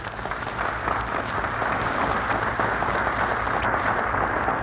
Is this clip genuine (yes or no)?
yes